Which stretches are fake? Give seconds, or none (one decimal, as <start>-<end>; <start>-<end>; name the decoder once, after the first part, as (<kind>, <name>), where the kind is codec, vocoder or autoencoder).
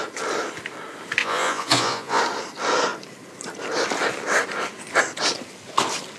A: 1.2-2.2 (vocoder, Vocos)